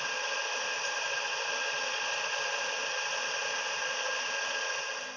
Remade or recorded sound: recorded